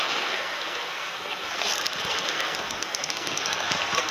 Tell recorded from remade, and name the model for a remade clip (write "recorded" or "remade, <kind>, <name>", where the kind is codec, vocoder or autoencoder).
remade, codec, SNAC